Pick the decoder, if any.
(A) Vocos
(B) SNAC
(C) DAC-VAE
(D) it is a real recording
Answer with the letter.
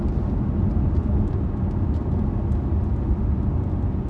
D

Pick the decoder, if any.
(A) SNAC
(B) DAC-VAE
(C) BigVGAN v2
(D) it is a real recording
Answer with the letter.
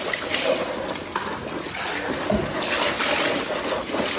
D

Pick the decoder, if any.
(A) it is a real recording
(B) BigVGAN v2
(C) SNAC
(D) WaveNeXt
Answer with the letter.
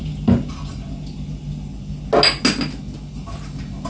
A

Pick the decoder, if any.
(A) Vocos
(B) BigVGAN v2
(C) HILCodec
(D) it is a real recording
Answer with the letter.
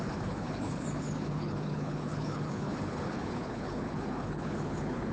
C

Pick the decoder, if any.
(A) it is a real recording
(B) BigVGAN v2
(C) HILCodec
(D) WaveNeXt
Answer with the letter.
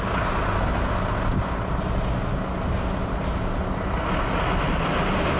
A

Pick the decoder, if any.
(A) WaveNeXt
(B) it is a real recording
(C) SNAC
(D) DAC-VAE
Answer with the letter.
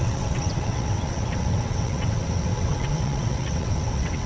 A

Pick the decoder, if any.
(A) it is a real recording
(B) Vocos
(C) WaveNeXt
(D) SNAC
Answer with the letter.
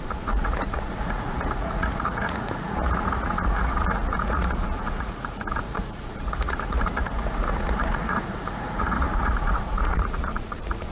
B